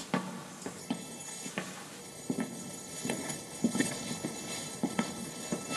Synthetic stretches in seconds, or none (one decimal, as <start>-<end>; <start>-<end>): 0.8-1.5; 2.0-5.8

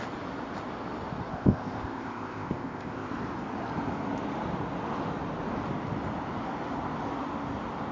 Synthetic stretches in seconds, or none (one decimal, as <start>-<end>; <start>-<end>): 1.3-3.1

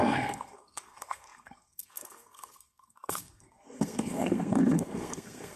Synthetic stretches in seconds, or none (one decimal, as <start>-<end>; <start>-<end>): 0.0-5.6

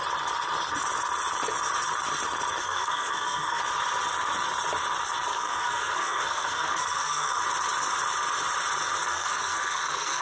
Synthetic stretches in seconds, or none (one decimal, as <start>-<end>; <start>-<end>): 2.6-3.6; 5.3-7.4; 9.1-10.2

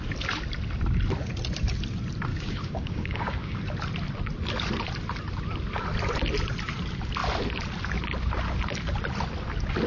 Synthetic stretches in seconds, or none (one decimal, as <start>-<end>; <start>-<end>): 2.3-3.6

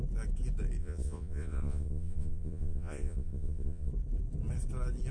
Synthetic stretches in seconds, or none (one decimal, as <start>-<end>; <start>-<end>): 0.8-3.9